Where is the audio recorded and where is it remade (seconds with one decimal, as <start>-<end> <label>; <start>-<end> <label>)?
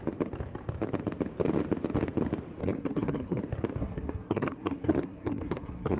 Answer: 0.0-2.6 recorded; 2.6-3.4 remade; 3.4-3.8 recorded; 3.8-6.0 remade